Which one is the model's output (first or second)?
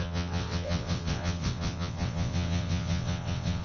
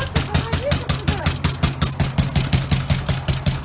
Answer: first